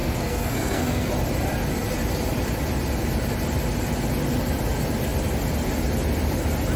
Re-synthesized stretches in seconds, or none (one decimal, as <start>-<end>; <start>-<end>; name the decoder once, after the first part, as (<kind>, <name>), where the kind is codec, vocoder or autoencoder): 0.0-1.1 (codec, SNAC)